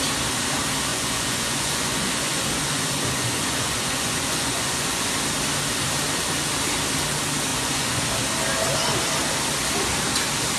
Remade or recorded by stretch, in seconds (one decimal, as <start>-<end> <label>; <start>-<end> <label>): 0.0-0.9 recorded; 0.9-5.1 remade; 5.1-7.5 recorded; 7.5-8.1 remade; 8.1-10.6 recorded